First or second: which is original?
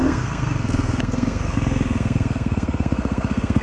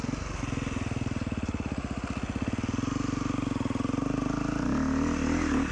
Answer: second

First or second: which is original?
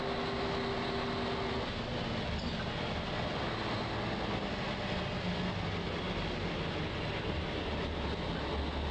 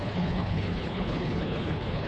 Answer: first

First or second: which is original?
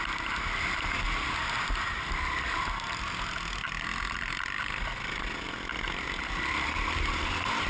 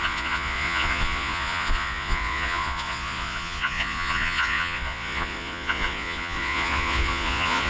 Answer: first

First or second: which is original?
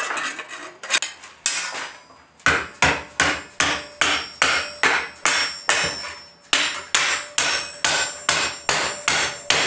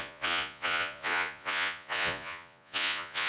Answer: first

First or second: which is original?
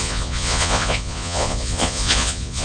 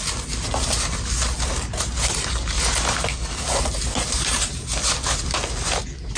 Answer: second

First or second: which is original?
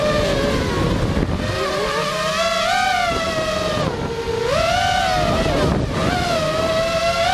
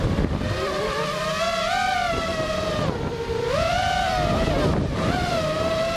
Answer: first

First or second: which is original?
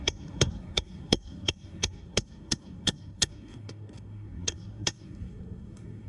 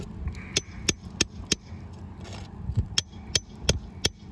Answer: second